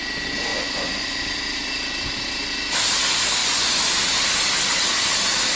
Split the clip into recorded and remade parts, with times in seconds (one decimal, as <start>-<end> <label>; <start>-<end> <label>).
0.0-0.5 recorded; 0.5-1.2 remade; 1.2-3.4 recorded; 3.4-4.0 remade; 4.0-5.6 recorded